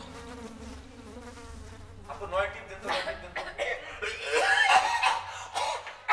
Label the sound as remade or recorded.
recorded